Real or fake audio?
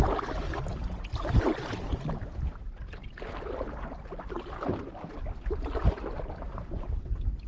real